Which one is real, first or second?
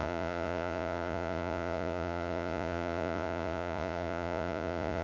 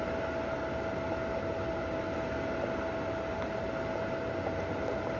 second